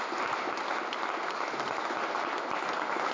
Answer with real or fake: real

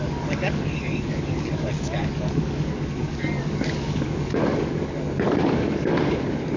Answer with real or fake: fake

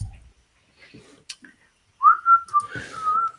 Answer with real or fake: real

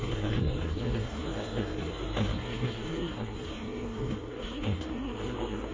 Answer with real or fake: fake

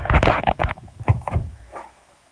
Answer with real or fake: fake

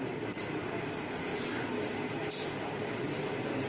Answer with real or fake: real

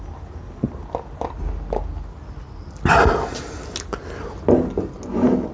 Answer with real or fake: real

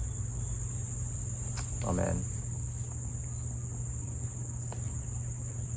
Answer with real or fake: real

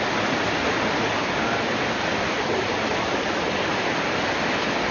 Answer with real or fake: real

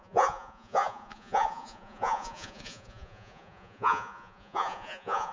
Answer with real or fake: fake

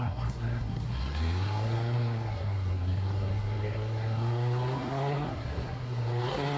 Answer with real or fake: fake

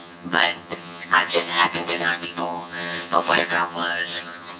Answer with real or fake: fake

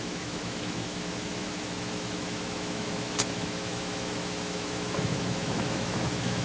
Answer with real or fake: fake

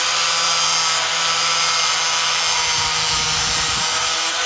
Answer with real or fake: real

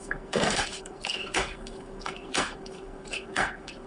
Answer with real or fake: fake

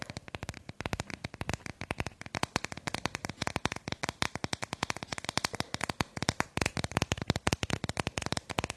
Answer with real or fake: real